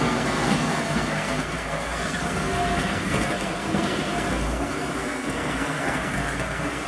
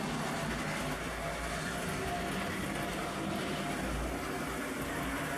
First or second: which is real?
second